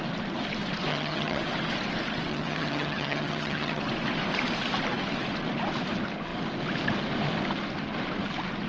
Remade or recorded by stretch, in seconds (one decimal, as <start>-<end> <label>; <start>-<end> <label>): 0.0-0.9 recorded; 0.9-1.4 remade; 1.4-2.3 recorded; 2.3-3.8 remade; 3.8-8.7 recorded